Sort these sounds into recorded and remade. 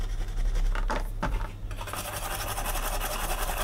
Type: recorded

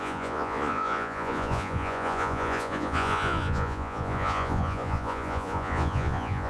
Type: remade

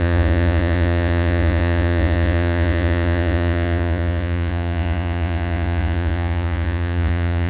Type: remade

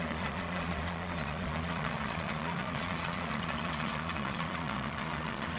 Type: remade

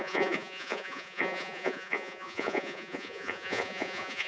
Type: remade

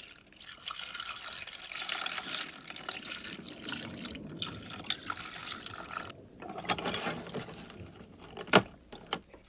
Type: recorded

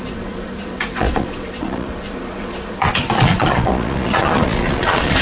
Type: remade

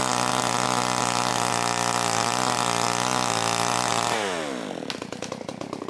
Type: recorded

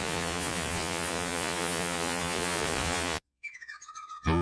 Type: remade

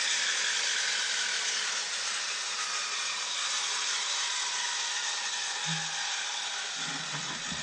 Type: recorded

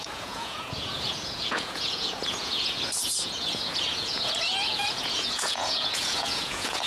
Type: remade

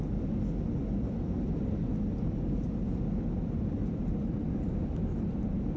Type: recorded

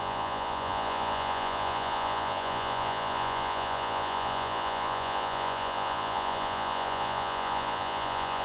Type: remade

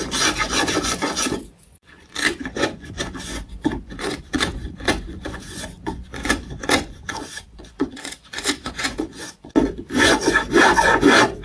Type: remade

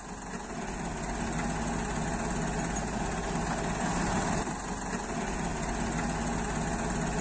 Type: recorded